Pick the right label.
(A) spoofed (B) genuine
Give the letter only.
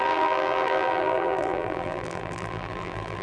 A